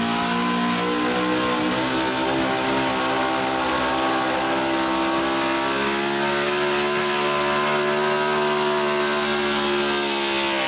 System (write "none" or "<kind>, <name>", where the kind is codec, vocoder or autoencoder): none